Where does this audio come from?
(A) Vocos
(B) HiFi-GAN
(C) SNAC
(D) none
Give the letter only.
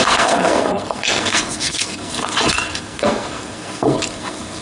C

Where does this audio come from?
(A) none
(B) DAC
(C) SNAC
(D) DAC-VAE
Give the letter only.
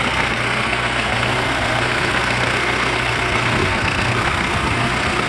C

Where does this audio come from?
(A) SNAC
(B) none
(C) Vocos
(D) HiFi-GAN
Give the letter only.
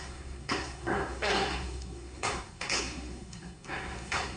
A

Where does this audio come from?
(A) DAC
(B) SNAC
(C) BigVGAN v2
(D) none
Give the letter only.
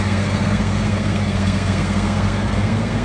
B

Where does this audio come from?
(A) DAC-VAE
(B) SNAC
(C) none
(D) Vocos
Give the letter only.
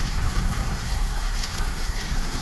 B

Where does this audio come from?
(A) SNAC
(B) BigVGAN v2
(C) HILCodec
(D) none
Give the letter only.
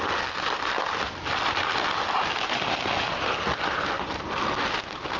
D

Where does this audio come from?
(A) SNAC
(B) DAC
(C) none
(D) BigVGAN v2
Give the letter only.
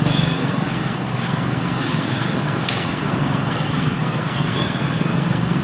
A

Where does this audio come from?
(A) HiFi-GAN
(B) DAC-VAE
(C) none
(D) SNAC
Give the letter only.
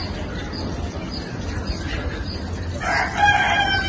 C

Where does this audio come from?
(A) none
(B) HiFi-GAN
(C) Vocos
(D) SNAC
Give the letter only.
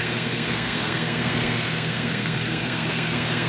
D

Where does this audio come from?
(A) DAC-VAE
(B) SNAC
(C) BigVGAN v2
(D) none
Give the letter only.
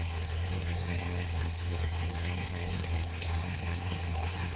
B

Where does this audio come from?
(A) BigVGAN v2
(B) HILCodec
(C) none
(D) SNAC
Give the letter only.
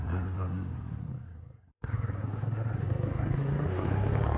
D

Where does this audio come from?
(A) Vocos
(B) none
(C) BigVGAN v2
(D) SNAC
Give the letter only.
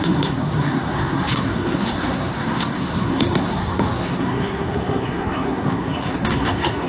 D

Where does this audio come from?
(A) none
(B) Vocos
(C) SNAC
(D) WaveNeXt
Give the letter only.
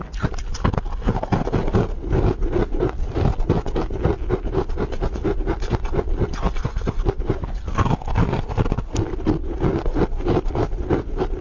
A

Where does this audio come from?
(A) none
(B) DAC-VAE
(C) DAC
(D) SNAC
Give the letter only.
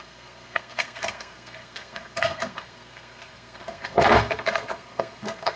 D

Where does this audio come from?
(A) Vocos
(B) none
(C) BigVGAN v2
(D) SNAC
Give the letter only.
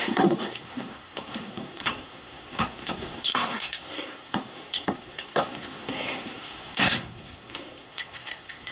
D